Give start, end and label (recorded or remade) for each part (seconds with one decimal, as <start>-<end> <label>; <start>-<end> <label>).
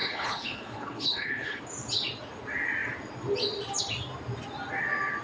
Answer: 0.0-1.6 remade; 1.6-5.2 recorded